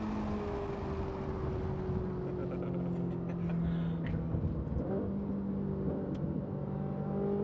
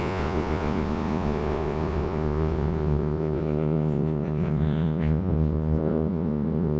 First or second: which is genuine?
first